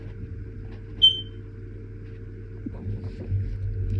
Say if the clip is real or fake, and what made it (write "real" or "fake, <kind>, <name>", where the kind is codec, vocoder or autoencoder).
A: real